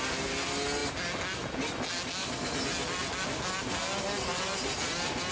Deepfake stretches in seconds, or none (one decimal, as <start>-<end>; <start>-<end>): none